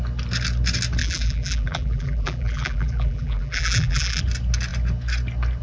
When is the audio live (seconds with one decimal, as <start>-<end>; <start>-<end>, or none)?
0.0-1.0; 4.2-5.6